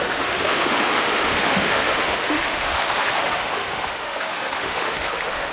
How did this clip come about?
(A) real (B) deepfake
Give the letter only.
B